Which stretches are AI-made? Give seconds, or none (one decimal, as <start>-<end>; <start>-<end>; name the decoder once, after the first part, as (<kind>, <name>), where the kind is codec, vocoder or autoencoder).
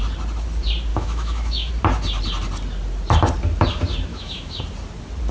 0.9-1.7 (autoencoder, DAC-VAE); 4.1-4.6